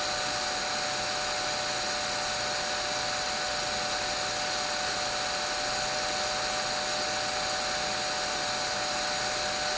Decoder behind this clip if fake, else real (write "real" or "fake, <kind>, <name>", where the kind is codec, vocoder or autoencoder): real